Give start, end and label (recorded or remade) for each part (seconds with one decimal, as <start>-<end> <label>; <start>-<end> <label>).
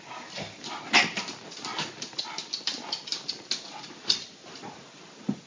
0.0-5.5 recorded